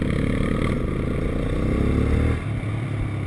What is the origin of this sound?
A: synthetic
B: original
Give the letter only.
B